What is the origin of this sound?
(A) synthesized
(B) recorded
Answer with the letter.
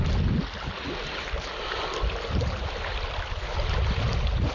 B